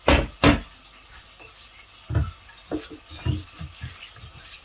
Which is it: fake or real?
real